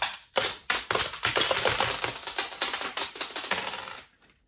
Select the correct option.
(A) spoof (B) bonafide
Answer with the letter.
B